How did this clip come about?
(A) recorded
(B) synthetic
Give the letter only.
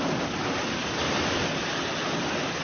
A